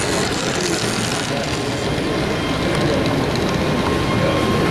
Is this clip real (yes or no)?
yes